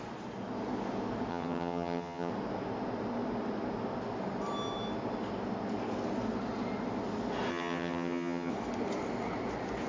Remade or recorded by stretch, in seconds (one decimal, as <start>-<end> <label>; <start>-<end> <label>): 0.0-1.3 recorded; 1.3-2.3 remade; 2.3-7.5 recorded; 7.5-8.5 remade; 8.5-9.9 recorded